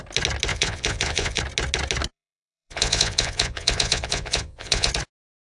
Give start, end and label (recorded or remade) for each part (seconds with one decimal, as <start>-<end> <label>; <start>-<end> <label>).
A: 0.0-0.5 recorded; 0.5-1.4 remade; 1.4-2.1 recorded; 2.1-4.9 remade; 4.9-5.6 recorded